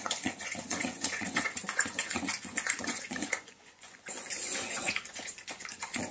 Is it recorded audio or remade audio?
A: remade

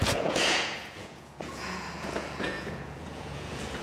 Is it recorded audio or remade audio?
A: remade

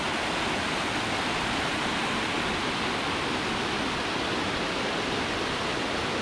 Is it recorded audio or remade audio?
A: recorded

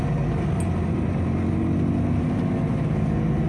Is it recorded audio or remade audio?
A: recorded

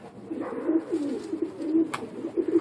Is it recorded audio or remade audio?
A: recorded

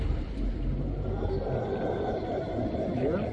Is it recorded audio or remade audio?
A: recorded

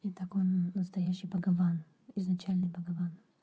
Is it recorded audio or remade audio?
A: remade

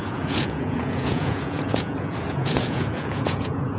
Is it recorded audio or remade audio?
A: remade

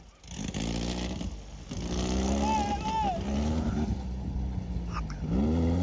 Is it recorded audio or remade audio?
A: recorded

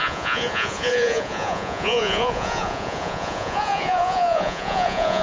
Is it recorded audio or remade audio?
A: remade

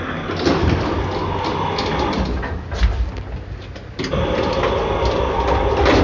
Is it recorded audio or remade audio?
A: recorded